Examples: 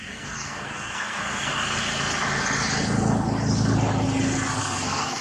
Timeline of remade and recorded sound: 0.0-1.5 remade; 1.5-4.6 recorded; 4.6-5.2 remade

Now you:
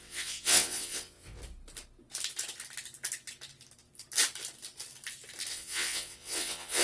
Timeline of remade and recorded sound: 0.0-1.4 remade; 1.4-5.5 recorded; 5.5-6.8 remade

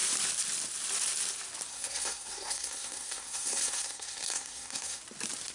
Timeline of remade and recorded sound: 0.0-1.7 recorded; 1.7-5.0 remade; 5.0-5.5 recorded

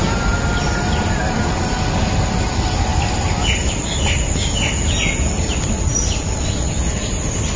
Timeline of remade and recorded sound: 0.0-7.6 recorded

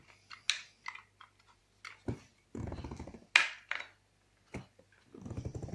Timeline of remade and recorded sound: 0.0-5.7 recorded

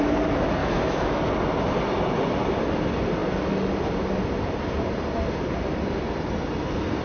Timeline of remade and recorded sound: 0.0-0.6 recorded; 0.6-1.2 remade; 1.2-7.0 recorded

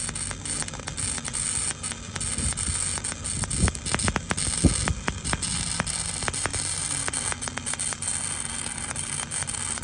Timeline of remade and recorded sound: 0.0-9.8 recorded